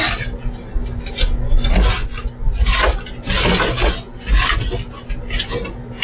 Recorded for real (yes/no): yes